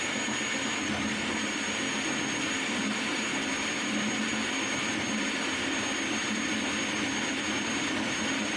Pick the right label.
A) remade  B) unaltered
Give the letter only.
B